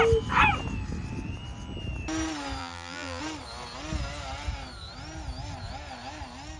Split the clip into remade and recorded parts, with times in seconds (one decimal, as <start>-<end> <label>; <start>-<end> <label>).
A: 0.0-2.6 recorded; 2.6-3.2 remade; 3.2-6.6 recorded